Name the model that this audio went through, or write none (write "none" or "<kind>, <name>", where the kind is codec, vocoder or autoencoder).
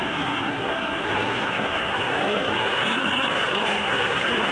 codec, SNAC